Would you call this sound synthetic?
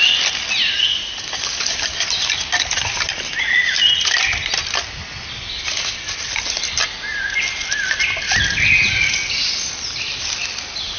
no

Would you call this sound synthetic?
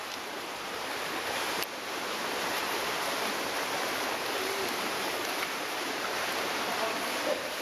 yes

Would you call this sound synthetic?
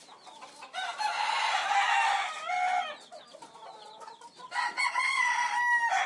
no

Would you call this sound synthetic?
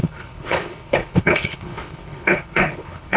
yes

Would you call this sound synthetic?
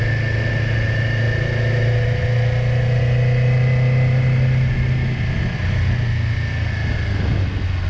no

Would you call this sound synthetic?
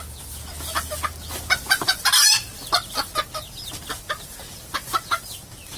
no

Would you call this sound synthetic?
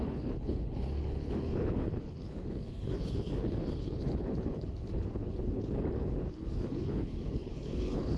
yes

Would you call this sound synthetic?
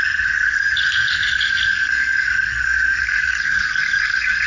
yes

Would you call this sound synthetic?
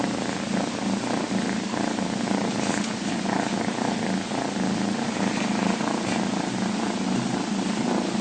no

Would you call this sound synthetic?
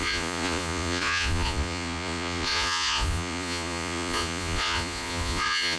yes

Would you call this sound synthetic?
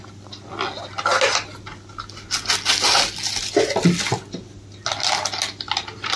no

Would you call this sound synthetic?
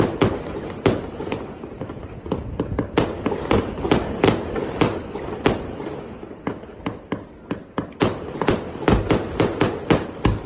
no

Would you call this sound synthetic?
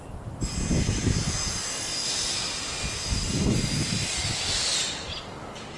no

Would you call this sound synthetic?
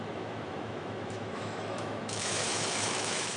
yes